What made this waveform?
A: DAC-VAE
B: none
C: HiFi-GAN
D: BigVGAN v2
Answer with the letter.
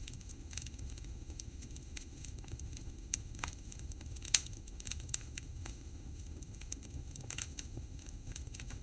A